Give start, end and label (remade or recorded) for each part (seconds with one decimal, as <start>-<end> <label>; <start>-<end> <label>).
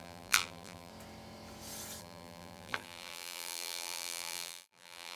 0.0-0.9 remade; 0.9-2.0 recorded; 2.0-5.2 remade